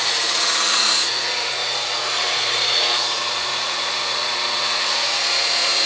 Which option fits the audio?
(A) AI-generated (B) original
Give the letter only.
A